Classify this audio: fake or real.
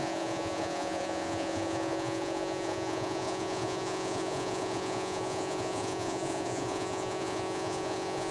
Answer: fake